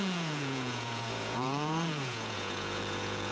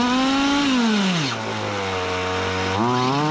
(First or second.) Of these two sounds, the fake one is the first